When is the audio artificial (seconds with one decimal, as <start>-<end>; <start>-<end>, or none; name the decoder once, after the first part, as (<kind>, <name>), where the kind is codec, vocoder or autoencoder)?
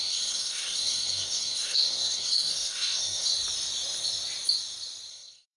0.0-3.3 (codec, SNAC); 5.1-5.6